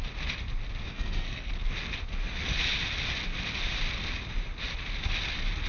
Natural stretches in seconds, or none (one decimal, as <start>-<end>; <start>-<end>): 0.0-0.8; 1.5-5.7

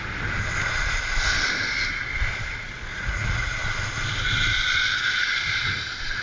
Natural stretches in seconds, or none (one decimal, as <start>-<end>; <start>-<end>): 0.0-2.9; 3.6-6.2

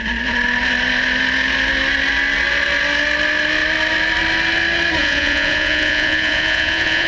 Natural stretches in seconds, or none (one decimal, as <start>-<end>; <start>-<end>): 0.0-5.0

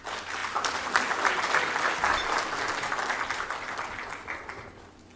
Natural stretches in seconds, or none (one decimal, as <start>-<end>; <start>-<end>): 0.0-5.2

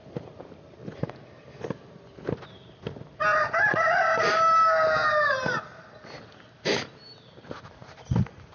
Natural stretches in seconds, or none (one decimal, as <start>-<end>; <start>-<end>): 0.0-8.5